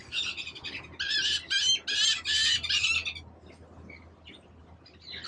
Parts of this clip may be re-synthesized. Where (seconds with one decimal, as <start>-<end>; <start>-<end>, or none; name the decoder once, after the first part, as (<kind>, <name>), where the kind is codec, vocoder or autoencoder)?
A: none